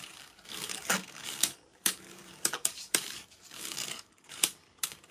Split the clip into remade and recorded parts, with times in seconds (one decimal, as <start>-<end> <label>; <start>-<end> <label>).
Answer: 0.0-5.1 remade